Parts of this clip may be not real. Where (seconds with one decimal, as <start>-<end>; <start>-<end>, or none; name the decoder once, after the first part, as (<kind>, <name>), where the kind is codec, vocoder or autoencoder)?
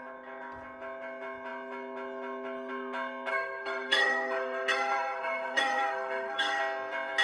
3.3-6.6 (codec, SNAC)